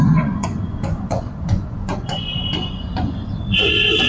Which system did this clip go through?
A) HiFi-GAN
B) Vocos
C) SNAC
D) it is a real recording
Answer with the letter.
B